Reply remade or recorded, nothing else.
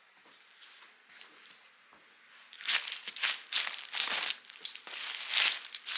recorded